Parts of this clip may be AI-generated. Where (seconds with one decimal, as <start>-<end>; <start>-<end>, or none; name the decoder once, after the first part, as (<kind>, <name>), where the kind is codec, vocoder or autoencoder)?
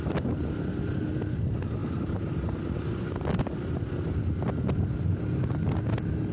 none